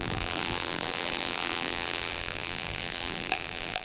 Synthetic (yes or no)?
yes